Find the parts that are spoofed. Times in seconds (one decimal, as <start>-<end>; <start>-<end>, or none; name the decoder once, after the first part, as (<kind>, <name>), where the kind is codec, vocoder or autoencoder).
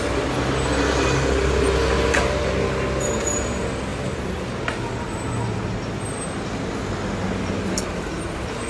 3.9-4.5 (vocoder, BigVGAN v2); 7.9-8.7